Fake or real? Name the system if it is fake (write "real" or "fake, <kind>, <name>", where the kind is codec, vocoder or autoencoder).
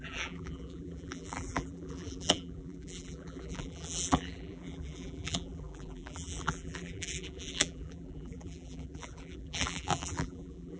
fake, vocoder, BigVGAN v2